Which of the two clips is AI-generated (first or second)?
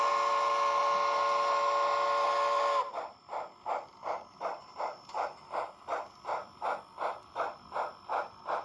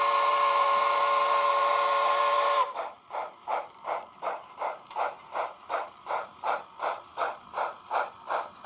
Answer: second